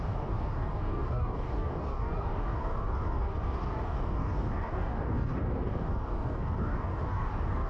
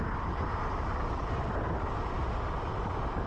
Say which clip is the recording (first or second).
second